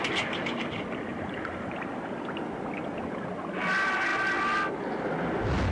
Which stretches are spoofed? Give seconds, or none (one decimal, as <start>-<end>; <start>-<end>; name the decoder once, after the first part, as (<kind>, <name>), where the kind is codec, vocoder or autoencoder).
1.1-1.9 (vocoder, BigVGAN v2)